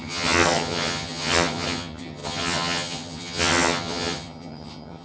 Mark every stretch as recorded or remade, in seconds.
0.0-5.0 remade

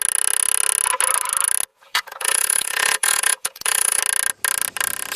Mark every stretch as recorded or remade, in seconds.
0.0-1.7 recorded; 1.7-4.0 remade; 4.0-5.2 recorded

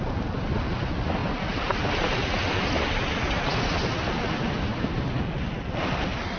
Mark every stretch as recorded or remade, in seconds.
0.0-4.7 recorded; 4.7-5.2 remade; 5.2-6.4 recorded

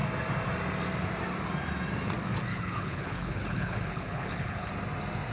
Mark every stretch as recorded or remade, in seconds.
0.0-2.5 recorded; 2.5-4.7 remade; 4.7-5.3 recorded